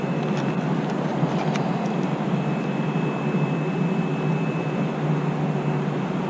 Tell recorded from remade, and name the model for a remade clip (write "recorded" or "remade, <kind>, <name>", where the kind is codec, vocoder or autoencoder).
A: recorded